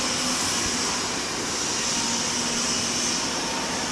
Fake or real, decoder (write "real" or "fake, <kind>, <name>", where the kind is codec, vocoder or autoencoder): real